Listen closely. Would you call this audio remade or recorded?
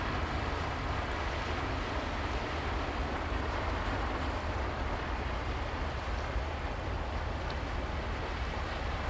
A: recorded